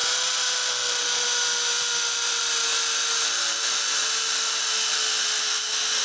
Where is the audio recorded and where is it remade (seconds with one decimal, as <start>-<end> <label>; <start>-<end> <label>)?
0.0-6.0 recorded